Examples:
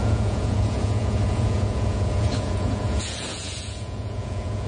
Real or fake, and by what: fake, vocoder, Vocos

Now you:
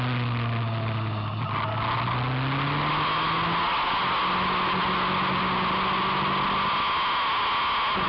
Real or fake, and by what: real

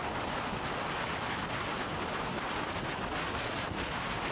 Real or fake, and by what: real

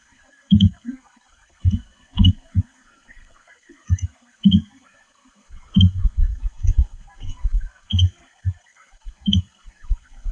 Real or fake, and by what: fake, codec, SNAC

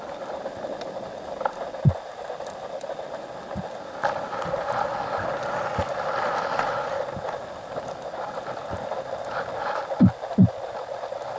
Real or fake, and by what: real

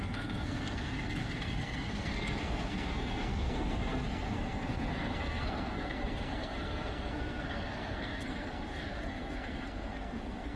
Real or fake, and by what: fake, codec, SNAC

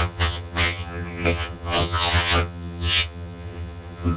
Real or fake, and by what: fake, vocoder, HiFi-GAN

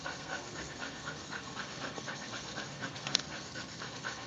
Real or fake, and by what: fake, codec, SNAC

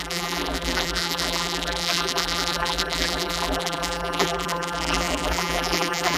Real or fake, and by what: fake, vocoder, BigVGAN v2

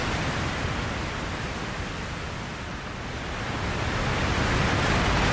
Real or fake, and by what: real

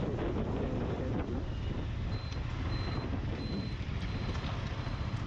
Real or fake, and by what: real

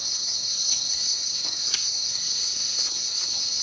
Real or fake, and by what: fake, codec, SNAC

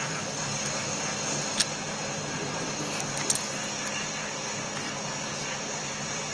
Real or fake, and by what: real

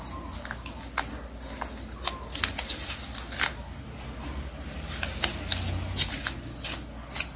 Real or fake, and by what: real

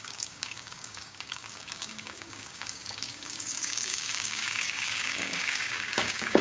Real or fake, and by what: fake, codec, DAC